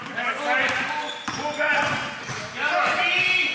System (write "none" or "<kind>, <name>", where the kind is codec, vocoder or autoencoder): none